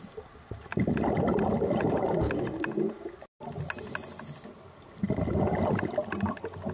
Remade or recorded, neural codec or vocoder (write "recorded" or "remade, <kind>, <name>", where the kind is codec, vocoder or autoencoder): recorded